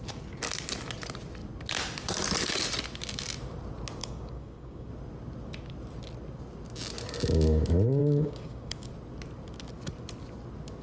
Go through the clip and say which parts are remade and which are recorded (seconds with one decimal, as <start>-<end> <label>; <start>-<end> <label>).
0.0-4.0 recorded; 4.0-4.9 remade; 4.9-8.0 recorded; 8.0-8.9 remade; 8.9-10.8 recorded